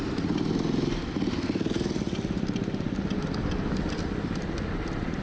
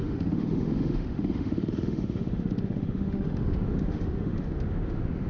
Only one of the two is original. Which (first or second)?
first